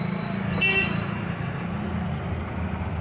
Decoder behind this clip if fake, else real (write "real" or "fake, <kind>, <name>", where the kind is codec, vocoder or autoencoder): real